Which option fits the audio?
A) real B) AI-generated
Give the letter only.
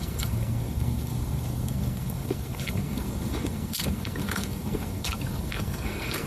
B